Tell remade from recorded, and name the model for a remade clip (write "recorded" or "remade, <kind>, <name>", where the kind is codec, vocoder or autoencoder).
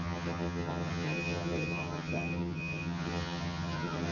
remade, vocoder, HiFi-GAN